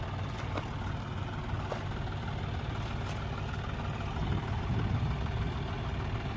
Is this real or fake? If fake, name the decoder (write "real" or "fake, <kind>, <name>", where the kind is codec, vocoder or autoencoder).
real